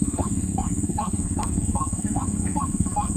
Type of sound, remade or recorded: remade